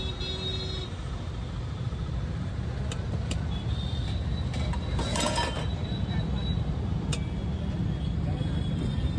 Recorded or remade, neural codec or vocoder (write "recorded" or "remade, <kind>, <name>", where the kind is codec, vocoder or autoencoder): recorded